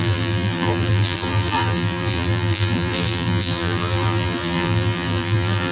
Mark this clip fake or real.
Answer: fake